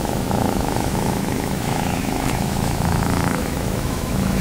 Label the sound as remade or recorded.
remade